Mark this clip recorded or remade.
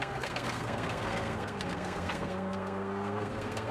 remade